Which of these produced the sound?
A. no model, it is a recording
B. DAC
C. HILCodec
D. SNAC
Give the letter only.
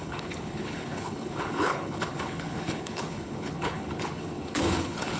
C